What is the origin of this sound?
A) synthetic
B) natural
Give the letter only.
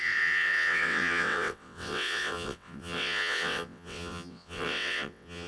A